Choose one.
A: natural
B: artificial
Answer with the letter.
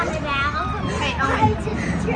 A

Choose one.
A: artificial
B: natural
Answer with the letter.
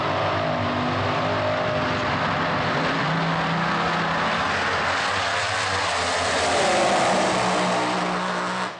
B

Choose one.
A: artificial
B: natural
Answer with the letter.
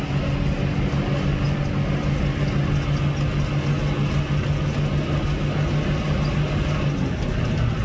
B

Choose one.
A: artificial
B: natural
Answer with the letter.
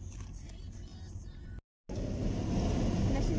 B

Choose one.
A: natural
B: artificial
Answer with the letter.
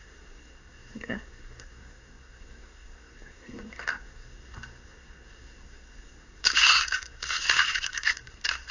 B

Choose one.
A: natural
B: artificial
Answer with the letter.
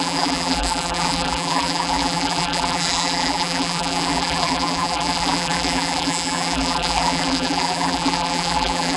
B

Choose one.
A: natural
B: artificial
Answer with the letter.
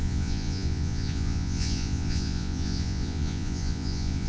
B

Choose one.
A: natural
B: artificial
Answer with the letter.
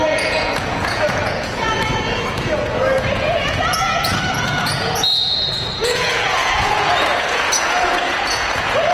B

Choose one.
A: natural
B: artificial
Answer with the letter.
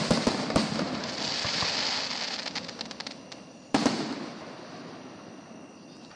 A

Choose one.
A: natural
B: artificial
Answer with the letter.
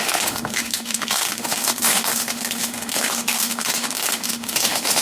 B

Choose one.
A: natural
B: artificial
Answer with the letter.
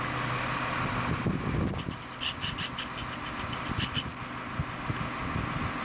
A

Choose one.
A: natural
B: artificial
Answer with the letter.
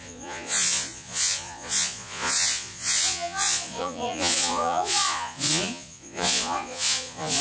B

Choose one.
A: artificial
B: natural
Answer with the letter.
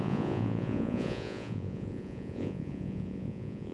A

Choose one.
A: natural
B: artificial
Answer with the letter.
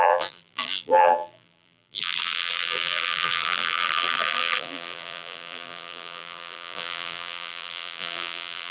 B